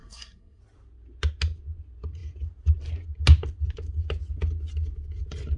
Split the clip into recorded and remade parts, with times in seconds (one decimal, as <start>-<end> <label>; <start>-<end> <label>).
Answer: 0.0-0.6 remade; 0.6-5.6 recorded